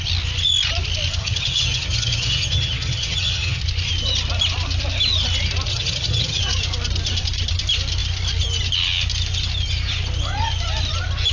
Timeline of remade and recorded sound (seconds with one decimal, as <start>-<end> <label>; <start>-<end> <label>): 0.0-1.2 recorded; 1.2-3.6 remade; 3.6-5.7 recorded; 5.7-6.4 remade; 6.4-11.3 recorded